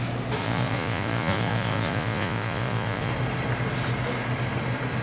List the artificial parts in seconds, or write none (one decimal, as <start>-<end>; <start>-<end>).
0.4-3.1